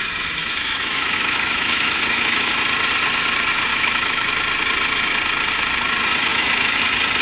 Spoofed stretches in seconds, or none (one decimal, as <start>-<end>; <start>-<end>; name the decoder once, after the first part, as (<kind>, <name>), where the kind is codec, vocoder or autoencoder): 0.4-2.5 (autoencoder, DAC-VAE); 3.7-4.3; 6.3-6.8